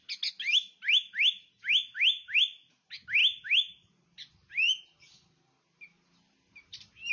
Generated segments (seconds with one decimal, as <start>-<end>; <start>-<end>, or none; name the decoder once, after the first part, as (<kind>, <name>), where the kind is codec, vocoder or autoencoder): none

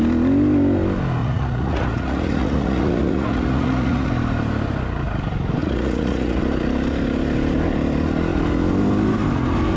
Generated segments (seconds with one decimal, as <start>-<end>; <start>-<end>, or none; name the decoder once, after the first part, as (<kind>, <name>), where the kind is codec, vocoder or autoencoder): 1.2-4.1 (vocoder, Vocos); 5.6-6.4

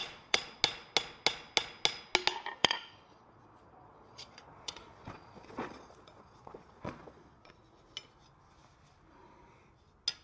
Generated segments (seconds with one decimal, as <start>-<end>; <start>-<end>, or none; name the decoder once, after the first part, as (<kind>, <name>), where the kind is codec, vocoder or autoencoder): 0.0-0.6 (vocoder, Vocos); 2.6-7.5